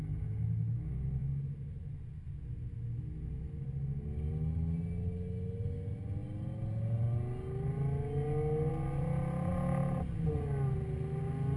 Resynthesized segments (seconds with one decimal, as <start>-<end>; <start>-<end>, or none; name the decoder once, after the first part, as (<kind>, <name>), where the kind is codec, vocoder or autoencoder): none